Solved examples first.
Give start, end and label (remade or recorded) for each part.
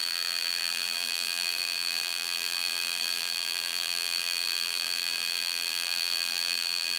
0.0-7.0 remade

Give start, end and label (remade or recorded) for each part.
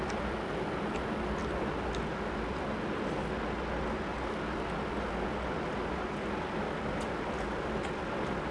0.0-8.5 recorded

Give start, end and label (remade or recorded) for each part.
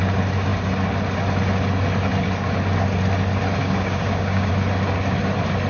0.0-3.6 recorded; 3.6-4.5 remade; 4.5-5.7 recorded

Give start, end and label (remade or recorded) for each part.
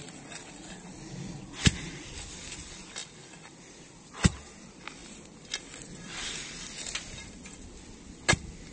0.0-8.7 recorded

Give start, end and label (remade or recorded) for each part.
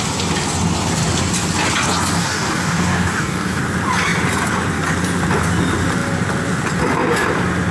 0.0-2.2 recorded; 2.2-3.6 remade; 3.6-7.7 recorded